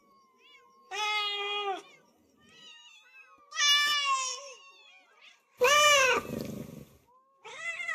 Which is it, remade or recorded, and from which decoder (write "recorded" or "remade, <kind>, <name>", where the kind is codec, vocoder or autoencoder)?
recorded